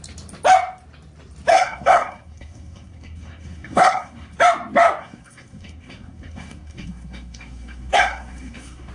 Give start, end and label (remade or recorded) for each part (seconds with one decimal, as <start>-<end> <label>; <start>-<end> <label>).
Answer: 0.0-1.5 recorded; 1.5-4.4 remade; 4.4-5.0 recorded; 5.0-8.9 remade